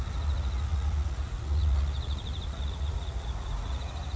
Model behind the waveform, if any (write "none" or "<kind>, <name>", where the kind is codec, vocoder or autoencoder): vocoder, Vocos